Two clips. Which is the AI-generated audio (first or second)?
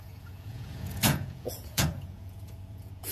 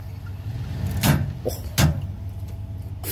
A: first